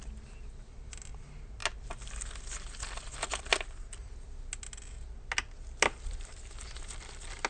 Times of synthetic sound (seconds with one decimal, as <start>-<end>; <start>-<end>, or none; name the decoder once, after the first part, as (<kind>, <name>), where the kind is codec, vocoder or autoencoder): none